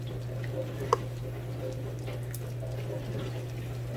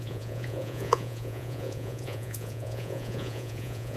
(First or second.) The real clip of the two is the first